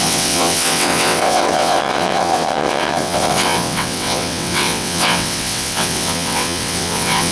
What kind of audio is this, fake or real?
fake